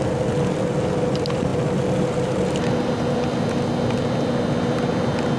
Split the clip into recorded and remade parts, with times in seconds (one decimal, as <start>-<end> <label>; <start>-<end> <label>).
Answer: 0.0-5.4 recorded